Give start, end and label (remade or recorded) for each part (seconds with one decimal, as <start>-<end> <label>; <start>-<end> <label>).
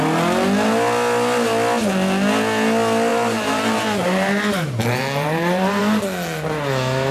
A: 0.0-3.1 recorded; 3.1-5.8 remade; 5.8-7.1 recorded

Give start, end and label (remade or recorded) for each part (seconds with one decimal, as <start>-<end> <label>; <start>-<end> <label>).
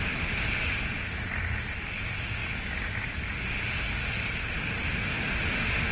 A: 0.0-5.9 recorded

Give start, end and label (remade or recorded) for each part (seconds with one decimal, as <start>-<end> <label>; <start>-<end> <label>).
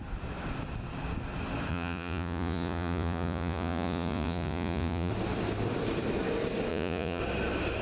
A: 0.0-1.7 recorded; 1.7-5.1 remade; 5.1-6.7 recorded; 6.7-7.2 remade; 7.2-7.8 recorded